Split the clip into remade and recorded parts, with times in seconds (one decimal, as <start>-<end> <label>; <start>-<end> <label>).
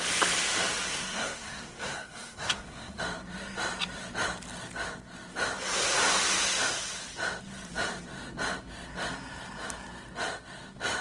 0.0-0.9 recorded; 0.9-3.0 remade; 3.0-11.0 recorded